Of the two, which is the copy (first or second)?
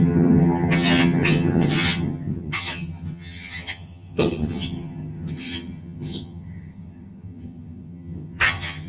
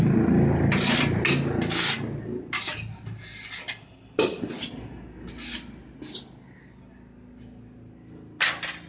first